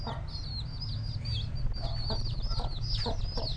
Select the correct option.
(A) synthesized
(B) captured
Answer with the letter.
B